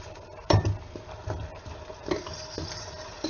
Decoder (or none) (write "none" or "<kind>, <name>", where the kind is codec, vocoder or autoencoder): none